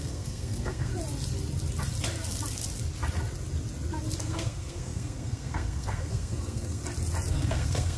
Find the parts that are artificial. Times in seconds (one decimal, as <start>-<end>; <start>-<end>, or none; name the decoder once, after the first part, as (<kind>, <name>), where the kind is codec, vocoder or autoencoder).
0.0-0.9 (codec, SNAC); 4.2-6.8; 7.3-8.0